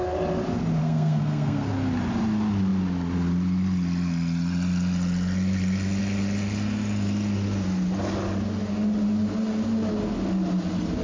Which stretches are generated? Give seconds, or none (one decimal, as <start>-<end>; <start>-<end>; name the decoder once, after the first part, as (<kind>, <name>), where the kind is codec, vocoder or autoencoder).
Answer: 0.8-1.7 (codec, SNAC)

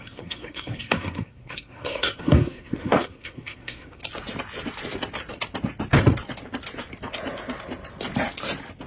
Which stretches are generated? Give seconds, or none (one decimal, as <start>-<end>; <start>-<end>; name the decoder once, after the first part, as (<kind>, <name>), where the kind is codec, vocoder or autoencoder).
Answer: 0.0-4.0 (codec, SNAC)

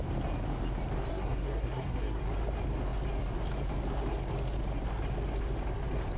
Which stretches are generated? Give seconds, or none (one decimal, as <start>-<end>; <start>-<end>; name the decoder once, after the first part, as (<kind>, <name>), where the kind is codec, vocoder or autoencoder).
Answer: 1.1-2.2 (codec, SNAC)